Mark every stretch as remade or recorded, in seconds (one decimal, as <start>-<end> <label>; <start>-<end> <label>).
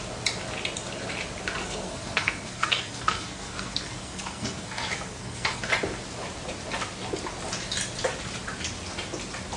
0.0-1.6 recorded; 1.6-5.7 remade; 5.7-9.6 recorded